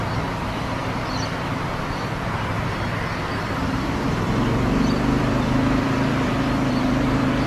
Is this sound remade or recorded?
remade